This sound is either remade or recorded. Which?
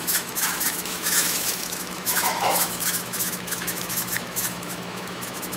remade